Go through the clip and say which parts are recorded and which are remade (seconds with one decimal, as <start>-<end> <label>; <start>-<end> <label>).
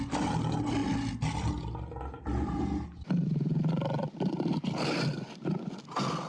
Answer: 0.0-6.3 recorded